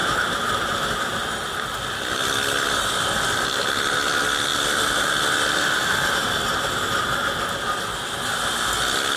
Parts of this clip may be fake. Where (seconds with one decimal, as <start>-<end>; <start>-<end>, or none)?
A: none

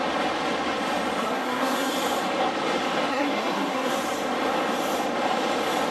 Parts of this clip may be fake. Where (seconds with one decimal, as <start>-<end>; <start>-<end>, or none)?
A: 1.2-1.9; 3.1-4.0

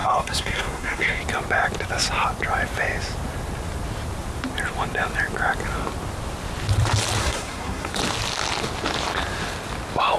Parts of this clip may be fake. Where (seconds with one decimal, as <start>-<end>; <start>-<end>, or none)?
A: 0.0-1.2; 7.2-7.9

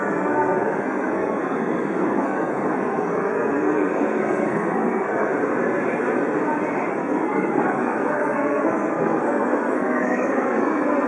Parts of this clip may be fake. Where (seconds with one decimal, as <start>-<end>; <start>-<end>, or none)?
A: 0.0-5.3; 6.9-11.1

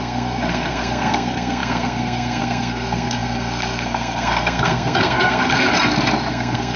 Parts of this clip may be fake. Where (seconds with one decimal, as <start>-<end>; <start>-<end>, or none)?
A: 0.0-5.7; 6.3-6.8

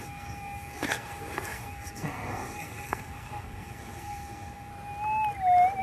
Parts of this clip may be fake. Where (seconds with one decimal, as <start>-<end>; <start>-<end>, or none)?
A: 0.0-4.7

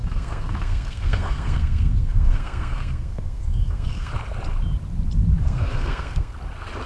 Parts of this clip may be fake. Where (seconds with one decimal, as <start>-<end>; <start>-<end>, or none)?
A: 0.0-4.1; 5.4-6.3

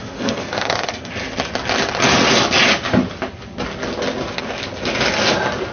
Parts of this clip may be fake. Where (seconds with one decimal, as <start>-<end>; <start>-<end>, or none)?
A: 0.0-1.1